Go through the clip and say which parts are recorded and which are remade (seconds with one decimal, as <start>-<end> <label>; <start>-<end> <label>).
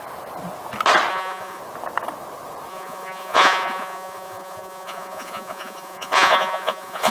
0.0-1.1 recorded; 1.1-1.6 remade; 1.6-2.7 recorded; 2.7-7.1 remade